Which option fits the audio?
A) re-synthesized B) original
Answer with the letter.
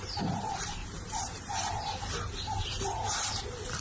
A